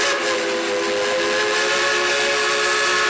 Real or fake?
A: real